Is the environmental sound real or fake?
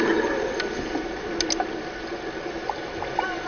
real